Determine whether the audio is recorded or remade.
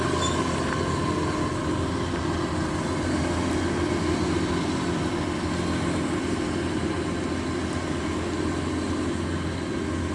recorded